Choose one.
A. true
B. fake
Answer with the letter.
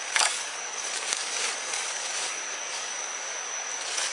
B